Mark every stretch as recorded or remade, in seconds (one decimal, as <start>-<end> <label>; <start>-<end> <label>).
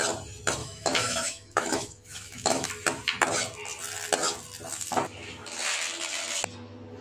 0.0-0.6 recorded; 0.6-2.7 remade; 2.7-7.0 recorded